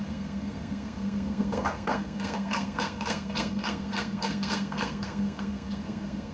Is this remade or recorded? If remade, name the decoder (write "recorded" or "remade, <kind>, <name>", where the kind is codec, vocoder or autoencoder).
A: remade, codec, SNAC